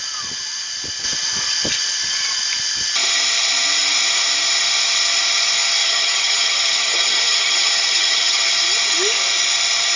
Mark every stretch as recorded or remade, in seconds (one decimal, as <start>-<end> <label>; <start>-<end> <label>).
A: 0.0-5.8 recorded; 5.8-8.5 remade; 8.5-10.0 recorded